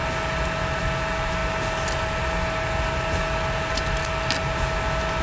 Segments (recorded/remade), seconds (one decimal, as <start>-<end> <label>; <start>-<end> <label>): 0.0-5.2 recorded